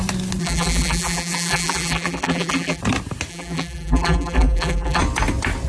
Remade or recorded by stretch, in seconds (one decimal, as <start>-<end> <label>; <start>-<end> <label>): 0.0-0.4 recorded; 0.4-2.8 remade; 2.8-3.3 recorded; 3.3-5.0 remade; 5.0-5.7 recorded